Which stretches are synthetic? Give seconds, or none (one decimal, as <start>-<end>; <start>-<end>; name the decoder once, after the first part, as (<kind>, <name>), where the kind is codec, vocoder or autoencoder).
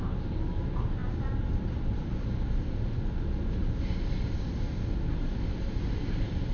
none